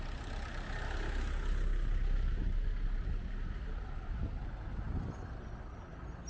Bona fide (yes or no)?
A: yes